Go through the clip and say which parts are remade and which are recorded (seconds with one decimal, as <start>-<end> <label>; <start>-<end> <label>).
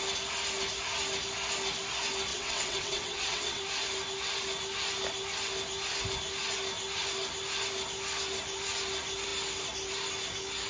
0.0-2.3 recorded; 2.3-3.6 remade; 3.6-10.7 recorded